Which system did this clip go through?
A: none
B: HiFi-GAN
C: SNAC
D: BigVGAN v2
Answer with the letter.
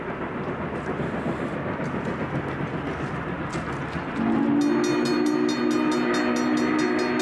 A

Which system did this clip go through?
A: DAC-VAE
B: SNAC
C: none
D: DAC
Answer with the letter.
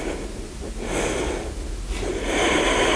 C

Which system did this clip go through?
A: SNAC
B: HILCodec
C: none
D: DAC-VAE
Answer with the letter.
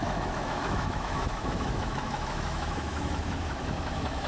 D